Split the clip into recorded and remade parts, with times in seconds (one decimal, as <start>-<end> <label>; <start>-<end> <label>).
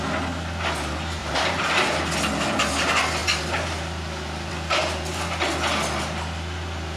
0.0-1.2 recorded; 1.2-2.0 remade; 2.0-7.0 recorded